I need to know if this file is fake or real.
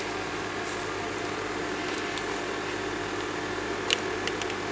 real